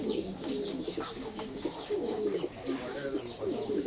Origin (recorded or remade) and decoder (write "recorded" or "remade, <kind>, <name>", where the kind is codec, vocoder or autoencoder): remade, codec, DAC